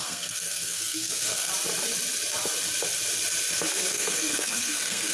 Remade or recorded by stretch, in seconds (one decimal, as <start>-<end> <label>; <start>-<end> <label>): 0.0-1.5 remade; 1.5-3.9 recorded; 3.9-5.1 remade